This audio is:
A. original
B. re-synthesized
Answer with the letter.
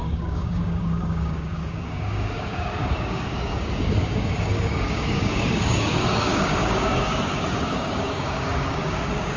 B